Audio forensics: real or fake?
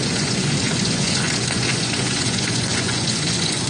fake